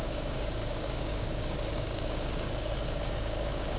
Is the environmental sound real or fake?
fake